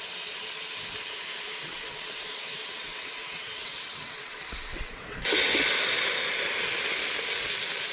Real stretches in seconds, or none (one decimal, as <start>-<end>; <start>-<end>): 0.0-1.6; 5.6-7.9